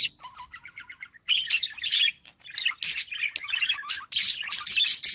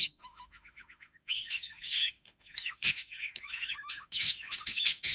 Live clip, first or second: first